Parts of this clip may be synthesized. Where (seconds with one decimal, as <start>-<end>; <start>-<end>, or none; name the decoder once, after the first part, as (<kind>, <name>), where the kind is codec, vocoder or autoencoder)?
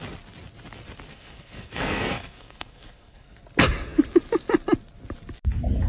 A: 1.1-3.4 (codec, SNAC)